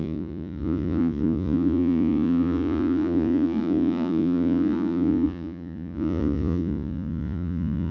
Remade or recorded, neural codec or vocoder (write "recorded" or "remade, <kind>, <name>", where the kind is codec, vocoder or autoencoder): remade, vocoder, Vocos